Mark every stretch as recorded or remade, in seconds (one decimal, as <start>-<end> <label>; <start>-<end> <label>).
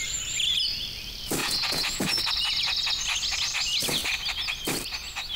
0.0-1.4 recorded; 1.4-2.2 remade; 2.2-5.4 recorded